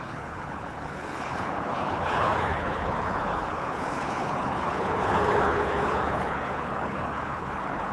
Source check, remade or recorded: remade